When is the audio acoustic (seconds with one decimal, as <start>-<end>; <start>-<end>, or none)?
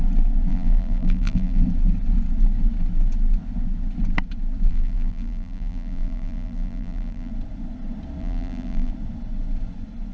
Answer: 0.0-0.5; 1.6-4.7; 7.3-8.2; 8.9-10.1